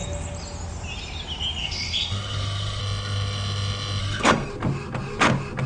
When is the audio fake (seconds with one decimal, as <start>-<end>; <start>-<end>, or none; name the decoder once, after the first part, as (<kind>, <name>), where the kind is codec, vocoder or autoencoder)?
1.6-2.8 (codec, SNAC); 4.0-4.5